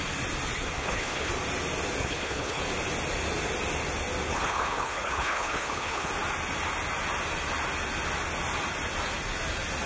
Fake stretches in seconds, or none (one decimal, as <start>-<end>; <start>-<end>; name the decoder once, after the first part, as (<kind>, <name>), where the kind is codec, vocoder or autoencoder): 0.8-1.3 (codec, HILCodec); 2.0-2.6; 4.3-6.1